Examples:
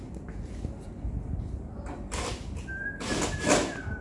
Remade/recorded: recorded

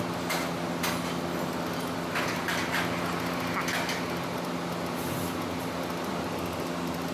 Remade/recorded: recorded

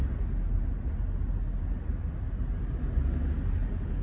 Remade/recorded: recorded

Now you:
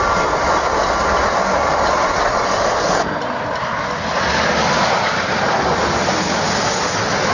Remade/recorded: recorded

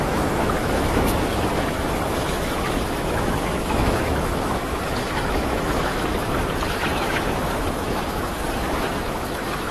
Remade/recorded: remade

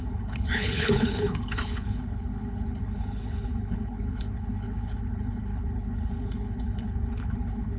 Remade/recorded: remade